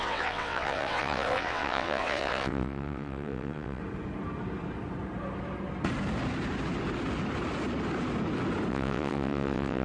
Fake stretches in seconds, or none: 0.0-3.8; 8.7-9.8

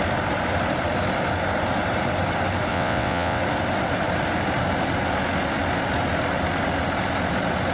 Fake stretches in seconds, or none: 2.7-3.4

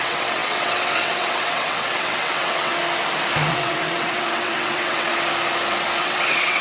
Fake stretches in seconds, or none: 0.0-2.7; 3.5-5.1; 6.0-6.6

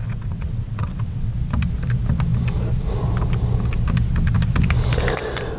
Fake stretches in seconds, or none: 0.0-1.3

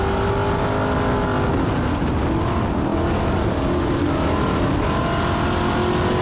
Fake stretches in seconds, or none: none

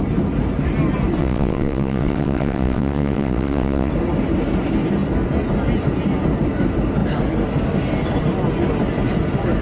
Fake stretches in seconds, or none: 1.2-3.9